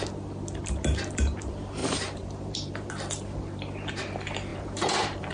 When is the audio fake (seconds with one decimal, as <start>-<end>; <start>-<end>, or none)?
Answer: 1.8-2.9; 4.5-5.3